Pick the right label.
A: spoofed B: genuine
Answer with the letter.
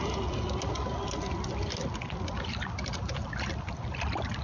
B